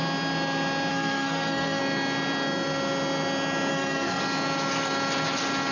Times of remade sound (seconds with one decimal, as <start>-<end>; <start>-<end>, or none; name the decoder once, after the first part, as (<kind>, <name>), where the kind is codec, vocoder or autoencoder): 0.9-1.8 (codec, SNAC); 3.7-4.2